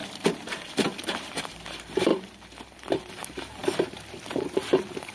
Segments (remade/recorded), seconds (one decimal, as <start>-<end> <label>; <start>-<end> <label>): 0.0-5.1 recorded